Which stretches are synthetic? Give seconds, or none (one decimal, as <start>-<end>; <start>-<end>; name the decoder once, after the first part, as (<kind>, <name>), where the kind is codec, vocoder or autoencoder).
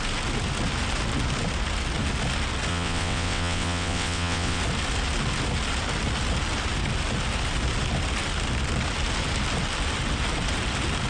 2.7-4.6 (vocoder, WaveNeXt)